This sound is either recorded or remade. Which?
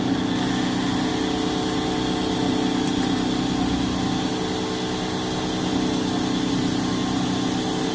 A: recorded